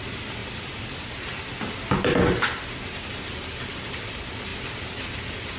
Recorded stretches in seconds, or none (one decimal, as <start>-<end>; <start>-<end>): 0.0-5.6